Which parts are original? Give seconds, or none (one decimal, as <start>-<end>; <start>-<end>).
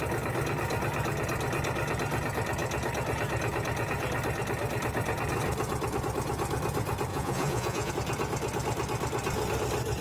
0.0-7.1; 7.9-10.0